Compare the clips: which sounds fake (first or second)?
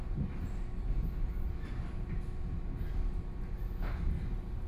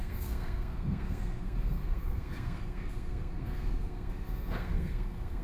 second